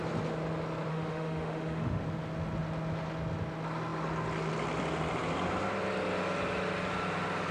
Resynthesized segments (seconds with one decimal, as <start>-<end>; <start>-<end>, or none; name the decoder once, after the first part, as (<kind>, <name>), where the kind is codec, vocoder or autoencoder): 0.9-2.0 (autoencoder, DAC-VAE)

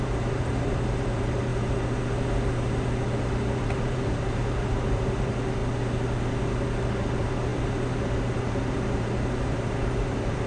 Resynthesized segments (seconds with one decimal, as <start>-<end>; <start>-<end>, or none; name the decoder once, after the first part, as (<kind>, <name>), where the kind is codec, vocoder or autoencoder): 0.0-1.5 (vocoder, BigVGAN v2); 3.6-5.6; 6.9-10.5

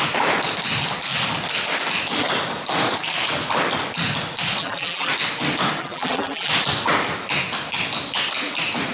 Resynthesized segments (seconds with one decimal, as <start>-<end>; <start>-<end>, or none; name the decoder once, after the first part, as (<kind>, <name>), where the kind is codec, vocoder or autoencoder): 4.6-5.1 (vocoder, BigVGAN v2); 5.8-6.5

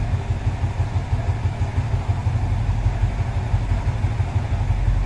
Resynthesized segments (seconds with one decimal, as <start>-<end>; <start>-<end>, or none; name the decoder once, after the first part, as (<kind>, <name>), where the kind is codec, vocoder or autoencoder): none

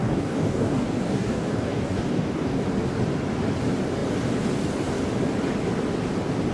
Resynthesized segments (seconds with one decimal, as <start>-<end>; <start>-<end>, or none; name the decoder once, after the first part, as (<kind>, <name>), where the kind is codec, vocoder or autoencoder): 0.0-2.6 (codec, DAC)

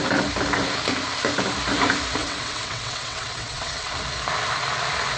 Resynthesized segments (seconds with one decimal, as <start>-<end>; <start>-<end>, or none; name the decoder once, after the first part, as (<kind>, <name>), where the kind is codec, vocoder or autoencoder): 2.2-3.9 (vocoder, WaveNeXt)

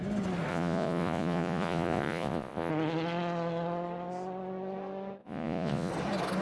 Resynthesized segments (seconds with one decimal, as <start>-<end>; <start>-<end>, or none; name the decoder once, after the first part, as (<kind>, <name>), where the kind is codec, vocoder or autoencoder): 0.5-2.7 (vocoder, Vocos); 5.2-5.9

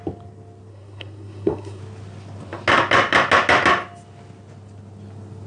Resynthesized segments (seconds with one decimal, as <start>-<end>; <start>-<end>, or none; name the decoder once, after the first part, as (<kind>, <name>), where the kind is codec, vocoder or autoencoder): 0.7-1.8 (codec, SNAC)